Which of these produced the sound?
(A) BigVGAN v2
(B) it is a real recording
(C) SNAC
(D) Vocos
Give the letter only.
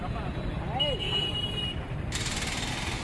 A